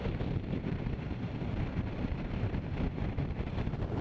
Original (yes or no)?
no